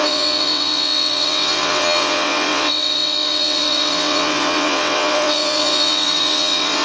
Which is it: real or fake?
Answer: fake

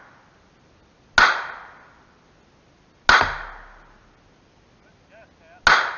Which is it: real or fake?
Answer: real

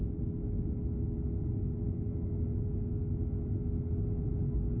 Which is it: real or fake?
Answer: real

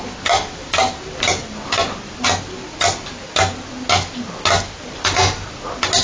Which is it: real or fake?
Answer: real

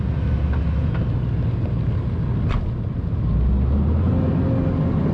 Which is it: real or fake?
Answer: real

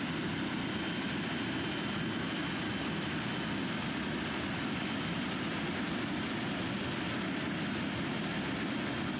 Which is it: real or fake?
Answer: real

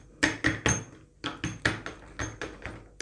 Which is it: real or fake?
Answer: real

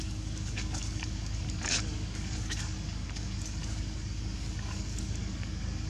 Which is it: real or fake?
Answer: fake